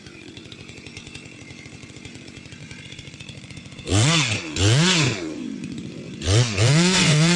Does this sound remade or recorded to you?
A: remade